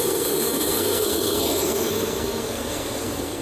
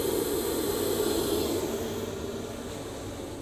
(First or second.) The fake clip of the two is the first